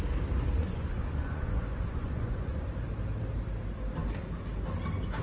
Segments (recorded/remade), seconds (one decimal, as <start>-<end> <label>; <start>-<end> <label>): 0.0-0.5 recorded; 0.5-2.7 remade; 2.7-5.2 recorded